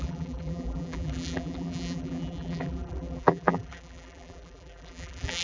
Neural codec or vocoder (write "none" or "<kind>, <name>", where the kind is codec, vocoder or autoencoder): vocoder, BigVGAN v2